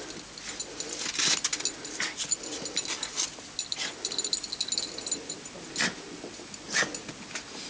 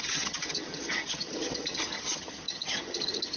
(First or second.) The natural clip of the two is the first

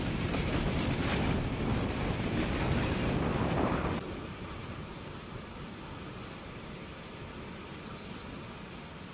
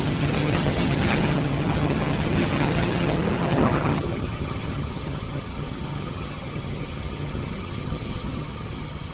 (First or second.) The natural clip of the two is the first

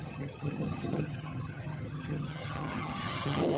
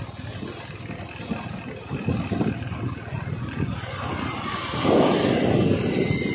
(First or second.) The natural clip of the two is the second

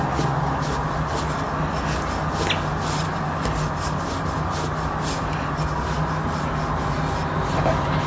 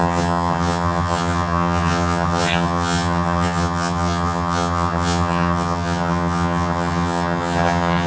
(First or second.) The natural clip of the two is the first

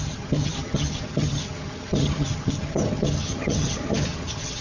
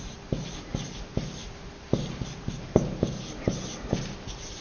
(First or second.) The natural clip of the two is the second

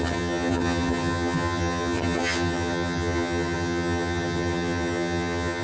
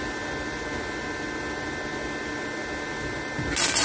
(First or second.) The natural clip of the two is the second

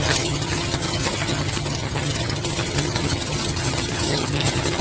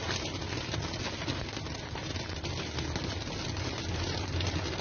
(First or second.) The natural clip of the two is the second